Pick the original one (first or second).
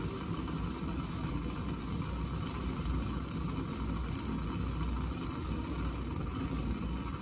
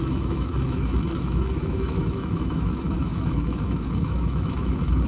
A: first